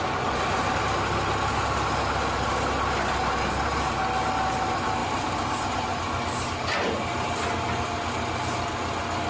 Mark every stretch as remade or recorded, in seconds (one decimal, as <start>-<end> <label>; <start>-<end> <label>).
0.0-9.3 recorded